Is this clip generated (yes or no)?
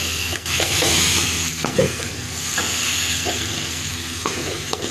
yes